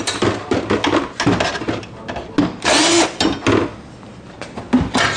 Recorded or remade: recorded